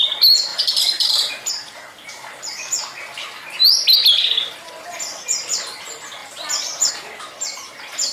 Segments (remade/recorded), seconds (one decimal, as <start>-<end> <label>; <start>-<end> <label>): 0.0-0.5 recorded; 0.5-1.5 remade; 1.5-6.2 recorded; 6.2-6.9 remade; 6.9-8.1 recorded